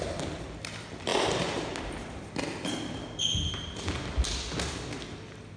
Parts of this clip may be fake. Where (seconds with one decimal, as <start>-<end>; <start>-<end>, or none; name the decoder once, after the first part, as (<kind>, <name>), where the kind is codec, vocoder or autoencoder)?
none